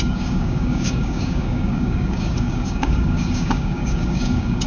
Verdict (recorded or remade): remade